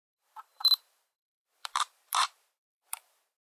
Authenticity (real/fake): fake